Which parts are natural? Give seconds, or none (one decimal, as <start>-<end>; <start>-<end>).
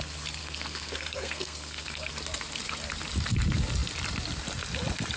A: 0.0-0.4; 2.1-5.2